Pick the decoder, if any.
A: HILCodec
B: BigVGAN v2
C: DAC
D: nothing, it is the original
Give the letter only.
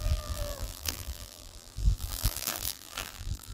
B